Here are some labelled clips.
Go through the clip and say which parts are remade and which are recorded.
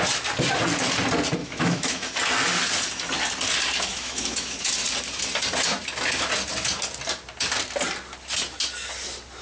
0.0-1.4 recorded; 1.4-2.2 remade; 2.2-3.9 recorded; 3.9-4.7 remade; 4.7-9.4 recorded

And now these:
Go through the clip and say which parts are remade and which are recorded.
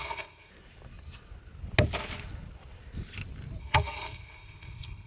0.0-0.5 remade; 0.5-3.6 recorded; 3.6-5.1 remade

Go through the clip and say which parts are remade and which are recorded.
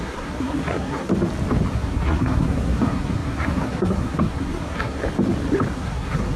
0.0-1.1 remade; 1.1-1.7 recorded; 1.7-5.0 remade; 5.0-5.7 recorded; 5.7-6.4 remade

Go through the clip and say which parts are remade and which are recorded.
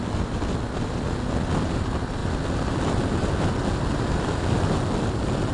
0.0-5.5 recorded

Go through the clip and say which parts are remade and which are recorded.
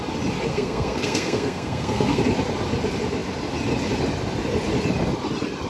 0.0-0.5 recorded; 0.5-2.2 remade; 2.2-5.7 recorded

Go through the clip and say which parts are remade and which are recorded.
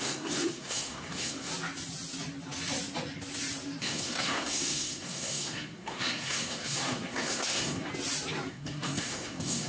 0.0-1.5 remade; 1.5-3.8 recorded; 3.8-7.9 remade; 7.9-8.5 recorded; 8.5-9.7 remade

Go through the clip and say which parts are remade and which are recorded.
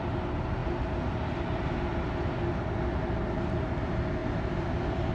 0.0-5.1 recorded